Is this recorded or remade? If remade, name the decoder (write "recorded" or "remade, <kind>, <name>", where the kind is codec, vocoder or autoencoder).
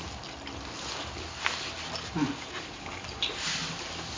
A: recorded